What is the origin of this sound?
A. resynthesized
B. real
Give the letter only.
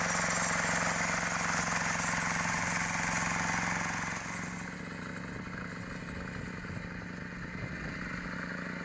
B